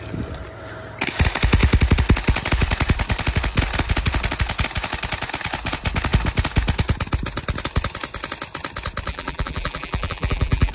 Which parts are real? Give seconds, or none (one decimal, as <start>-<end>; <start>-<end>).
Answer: 0.0-9.1

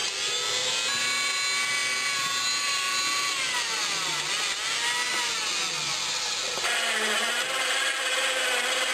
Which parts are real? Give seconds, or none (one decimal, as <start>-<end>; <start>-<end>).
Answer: 0.0-8.9

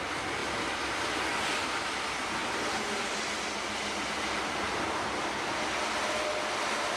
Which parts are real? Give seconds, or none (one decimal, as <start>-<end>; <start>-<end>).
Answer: 0.0-7.0

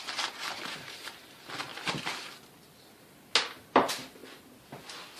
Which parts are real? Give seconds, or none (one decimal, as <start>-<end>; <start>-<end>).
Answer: 0.0-5.2

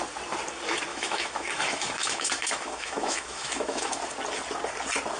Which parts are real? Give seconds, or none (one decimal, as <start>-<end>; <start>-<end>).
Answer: 0.0-0.9; 4.0-5.2

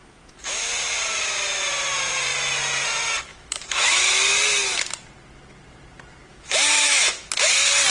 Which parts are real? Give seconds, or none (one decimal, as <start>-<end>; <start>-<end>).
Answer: 0.7-3.3; 3.9-6.3; 7.3-7.9

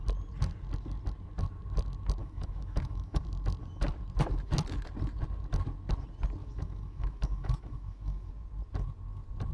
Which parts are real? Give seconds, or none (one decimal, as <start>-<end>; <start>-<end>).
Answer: 0.0-2.2; 3.2-6.4; 8.3-9.5

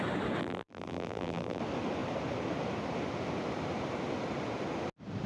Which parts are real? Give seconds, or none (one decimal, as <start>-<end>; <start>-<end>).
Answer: 0.0-0.4; 1.6-5.3